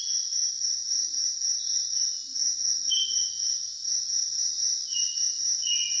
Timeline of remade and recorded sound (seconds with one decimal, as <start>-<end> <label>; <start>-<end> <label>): 0.0-6.0 recorded

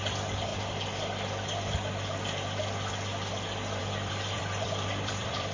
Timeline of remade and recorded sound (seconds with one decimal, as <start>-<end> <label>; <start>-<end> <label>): 0.0-0.5 remade; 0.5-3.8 recorded; 3.8-5.5 remade